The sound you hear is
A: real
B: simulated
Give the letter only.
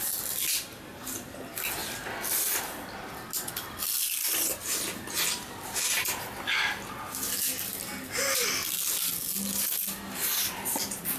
A